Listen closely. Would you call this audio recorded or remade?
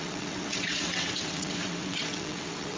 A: remade